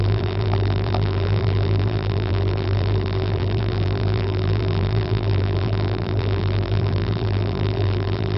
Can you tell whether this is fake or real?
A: fake